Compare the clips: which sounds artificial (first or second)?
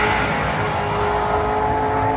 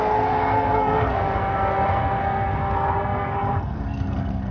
second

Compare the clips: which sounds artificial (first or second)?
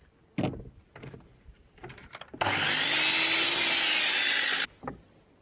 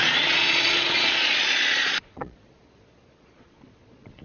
second